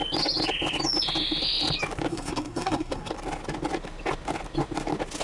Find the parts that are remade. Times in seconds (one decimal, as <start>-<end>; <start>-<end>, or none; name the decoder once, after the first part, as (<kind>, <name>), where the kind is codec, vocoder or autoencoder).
2.1-3.1 (codec, SNAC)